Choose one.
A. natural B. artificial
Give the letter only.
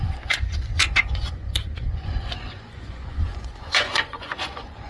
B